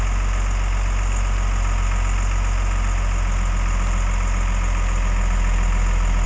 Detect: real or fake real